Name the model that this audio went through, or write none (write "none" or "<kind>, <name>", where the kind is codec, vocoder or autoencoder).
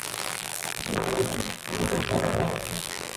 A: vocoder, BigVGAN v2